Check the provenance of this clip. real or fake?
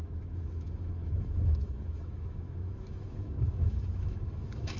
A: fake